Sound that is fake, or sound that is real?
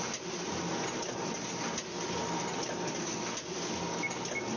real